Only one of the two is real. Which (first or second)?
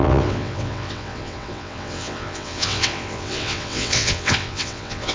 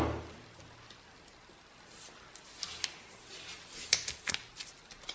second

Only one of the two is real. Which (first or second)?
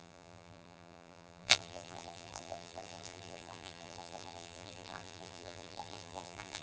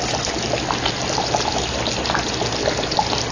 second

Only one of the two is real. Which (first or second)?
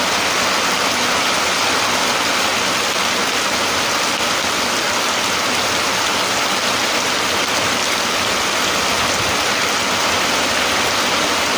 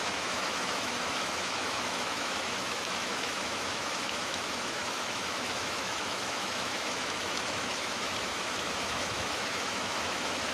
first